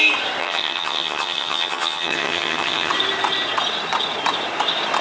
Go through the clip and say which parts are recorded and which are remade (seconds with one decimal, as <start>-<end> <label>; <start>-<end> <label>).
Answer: 0.0-0.4 recorded; 0.4-2.9 remade; 2.9-5.0 recorded